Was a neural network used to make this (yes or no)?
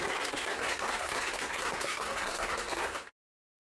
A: yes